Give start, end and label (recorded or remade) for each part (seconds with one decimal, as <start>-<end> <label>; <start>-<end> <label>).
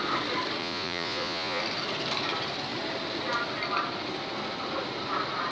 0.0-0.6 recorded; 0.6-1.6 remade; 1.6-5.5 recorded